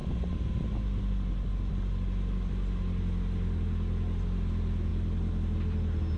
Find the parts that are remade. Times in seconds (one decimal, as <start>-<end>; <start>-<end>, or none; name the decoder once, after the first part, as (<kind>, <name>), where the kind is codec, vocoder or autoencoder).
none